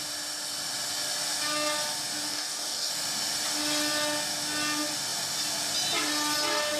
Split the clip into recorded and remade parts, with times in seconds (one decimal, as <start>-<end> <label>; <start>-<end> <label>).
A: 0.0-2.3 recorded; 2.3-2.9 remade; 2.9-6.8 recorded